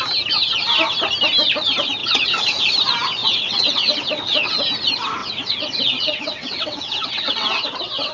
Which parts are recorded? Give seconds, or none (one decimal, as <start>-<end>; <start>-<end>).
0.0-2.0; 2.6-3.2; 4.5-5.2